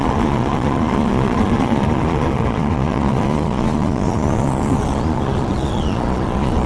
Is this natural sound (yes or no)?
no